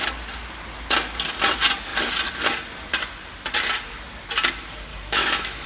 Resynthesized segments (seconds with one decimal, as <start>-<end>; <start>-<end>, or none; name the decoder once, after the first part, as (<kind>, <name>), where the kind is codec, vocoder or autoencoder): 4.9-5.7 (autoencoder, DAC-VAE)